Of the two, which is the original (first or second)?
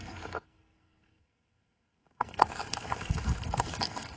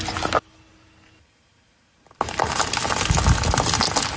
second